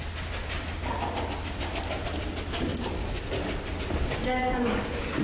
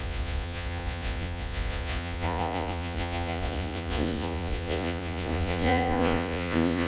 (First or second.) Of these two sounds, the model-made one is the second